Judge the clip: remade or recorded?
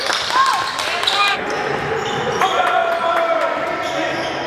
recorded